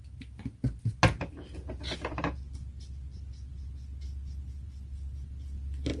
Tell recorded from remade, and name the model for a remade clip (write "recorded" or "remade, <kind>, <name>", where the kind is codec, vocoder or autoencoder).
recorded